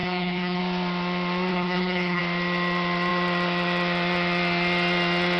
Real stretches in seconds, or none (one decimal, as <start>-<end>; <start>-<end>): 0.6-1.5; 2.2-5.4